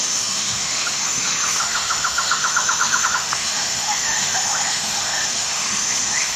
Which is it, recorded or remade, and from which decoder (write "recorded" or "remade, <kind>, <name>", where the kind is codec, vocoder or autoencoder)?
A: remade, autoencoder, DAC-VAE